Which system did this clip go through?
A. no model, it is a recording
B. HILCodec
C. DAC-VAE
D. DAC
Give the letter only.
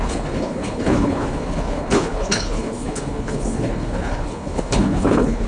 B